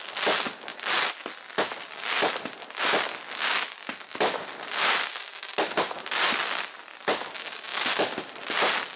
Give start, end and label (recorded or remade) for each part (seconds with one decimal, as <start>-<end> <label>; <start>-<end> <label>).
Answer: 0.0-9.0 recorded